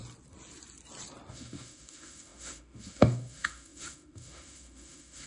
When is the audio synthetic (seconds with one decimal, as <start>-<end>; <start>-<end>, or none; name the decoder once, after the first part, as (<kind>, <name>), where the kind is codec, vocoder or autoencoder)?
1.3-5.3 (autoencoder, DAC-VAE)

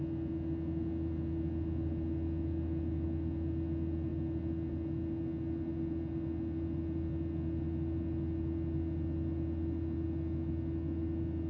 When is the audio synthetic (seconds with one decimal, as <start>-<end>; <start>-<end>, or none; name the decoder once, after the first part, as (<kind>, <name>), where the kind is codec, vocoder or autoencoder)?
none

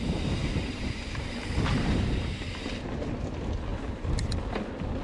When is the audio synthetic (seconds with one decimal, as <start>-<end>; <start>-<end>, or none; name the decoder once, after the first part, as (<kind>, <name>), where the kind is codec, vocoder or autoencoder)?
0.4-2.4 (vocoder, BigVGAN v2); 3.7-4.3

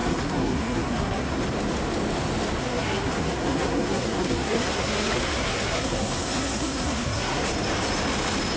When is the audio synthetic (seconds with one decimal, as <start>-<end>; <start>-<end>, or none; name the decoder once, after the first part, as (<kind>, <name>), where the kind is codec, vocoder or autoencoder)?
0.0-1.4 (codec, SNAC); 2.6-7.5

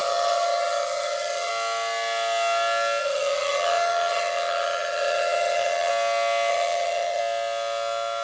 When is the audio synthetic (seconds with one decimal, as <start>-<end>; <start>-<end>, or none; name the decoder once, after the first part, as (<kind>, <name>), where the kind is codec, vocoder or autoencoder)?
0.0-1.5 (vocoder, HiFi-GAN); 3.0-5.9; 6.5-7.2

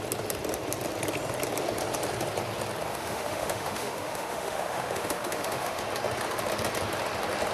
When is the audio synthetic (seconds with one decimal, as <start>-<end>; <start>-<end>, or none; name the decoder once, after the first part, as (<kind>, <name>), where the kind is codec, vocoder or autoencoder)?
2.9-5.8 (autoencoder, DAC-VAE)

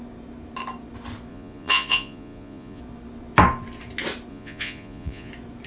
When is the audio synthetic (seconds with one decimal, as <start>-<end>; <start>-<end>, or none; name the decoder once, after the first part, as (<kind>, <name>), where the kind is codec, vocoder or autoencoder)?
1.3-2.8 (vocoder, Vocos); 4.3-5.3